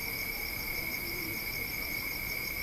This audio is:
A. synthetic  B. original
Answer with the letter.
A